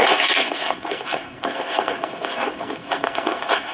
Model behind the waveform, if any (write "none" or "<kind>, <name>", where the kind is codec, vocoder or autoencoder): codec, SNAC